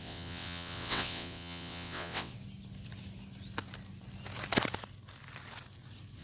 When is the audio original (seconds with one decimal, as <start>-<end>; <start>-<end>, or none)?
2.3-6.2